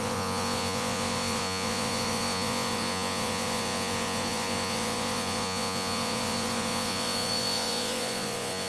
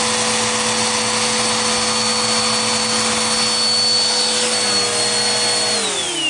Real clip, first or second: second